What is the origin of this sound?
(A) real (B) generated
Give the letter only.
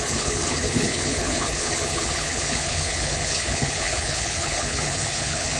B